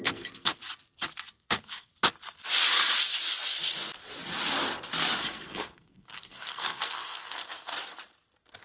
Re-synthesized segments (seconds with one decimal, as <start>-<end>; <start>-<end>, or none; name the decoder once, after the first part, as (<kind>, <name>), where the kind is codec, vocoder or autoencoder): 0.0-0.6 (codec, SNAC); 1.3-1.9; 5.2-7.7